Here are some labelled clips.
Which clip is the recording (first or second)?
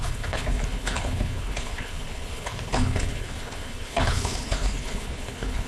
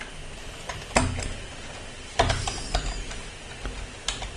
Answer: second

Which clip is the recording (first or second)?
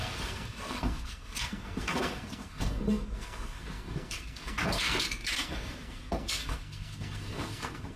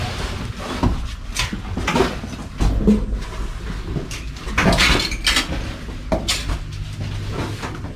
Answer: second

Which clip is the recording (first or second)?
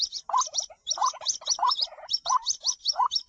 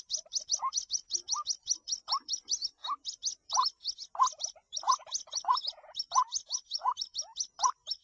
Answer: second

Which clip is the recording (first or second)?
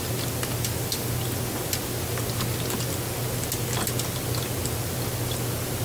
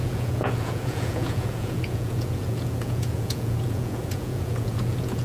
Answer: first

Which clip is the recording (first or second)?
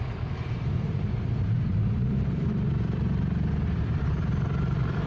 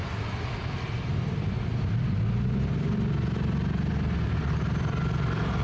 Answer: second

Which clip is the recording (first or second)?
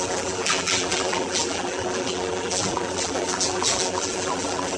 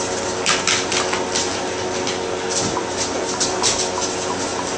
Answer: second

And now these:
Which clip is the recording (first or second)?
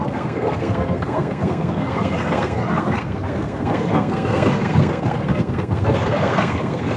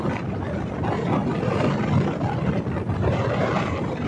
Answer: second